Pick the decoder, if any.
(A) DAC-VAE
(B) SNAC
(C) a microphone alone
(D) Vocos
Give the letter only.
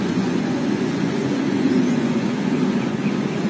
D